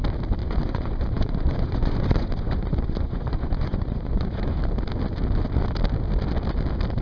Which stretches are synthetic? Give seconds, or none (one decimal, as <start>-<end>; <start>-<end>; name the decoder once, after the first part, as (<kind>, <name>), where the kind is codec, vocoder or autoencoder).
0.4-4.6 (vocoder, Vocos)

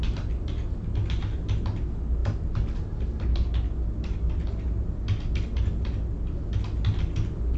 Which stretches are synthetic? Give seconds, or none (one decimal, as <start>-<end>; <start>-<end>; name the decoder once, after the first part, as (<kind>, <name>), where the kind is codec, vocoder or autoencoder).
none

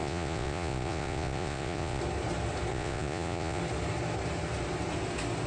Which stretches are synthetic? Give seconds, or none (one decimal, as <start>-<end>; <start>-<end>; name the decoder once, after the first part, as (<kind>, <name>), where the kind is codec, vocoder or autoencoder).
0.0-2.0 (vocoder, Vocos); 2.7-3.6

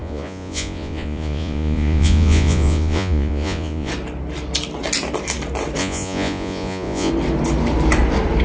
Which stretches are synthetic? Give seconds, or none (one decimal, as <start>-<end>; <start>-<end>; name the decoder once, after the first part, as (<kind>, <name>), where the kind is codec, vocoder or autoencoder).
0.0-3.9 (vocoder, Vocos); 5.8-7.1

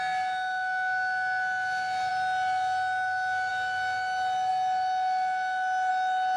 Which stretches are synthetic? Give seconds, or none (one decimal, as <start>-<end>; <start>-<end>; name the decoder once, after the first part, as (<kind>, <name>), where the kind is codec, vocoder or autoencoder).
none

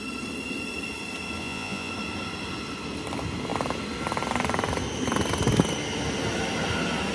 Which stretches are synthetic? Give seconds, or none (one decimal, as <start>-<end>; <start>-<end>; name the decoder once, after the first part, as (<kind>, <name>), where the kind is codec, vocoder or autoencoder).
1.4-1.9 (vocoder, Vocos)